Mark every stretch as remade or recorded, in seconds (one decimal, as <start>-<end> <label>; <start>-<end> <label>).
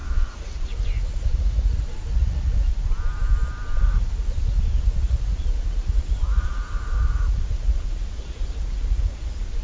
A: 0.0-2.7 remade; 2.7-3.8 recorded; 3.8-9.6 remade